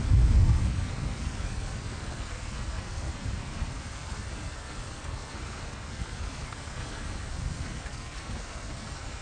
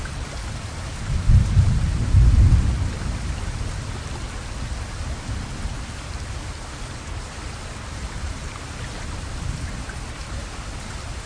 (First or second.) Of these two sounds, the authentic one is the second